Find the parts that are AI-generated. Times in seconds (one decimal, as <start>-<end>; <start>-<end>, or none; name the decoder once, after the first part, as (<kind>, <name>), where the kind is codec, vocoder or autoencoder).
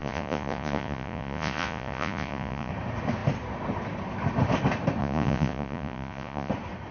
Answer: 0.0-2.7 (vocoder, Vocos); 5.0-6.5